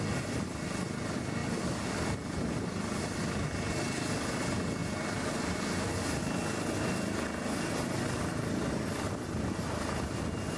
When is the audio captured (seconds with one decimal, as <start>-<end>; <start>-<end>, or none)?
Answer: 0.0-10.6